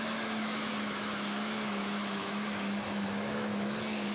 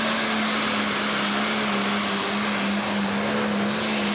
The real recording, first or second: second